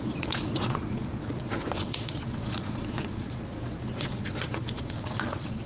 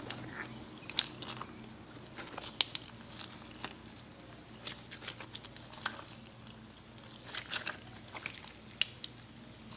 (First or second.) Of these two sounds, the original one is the second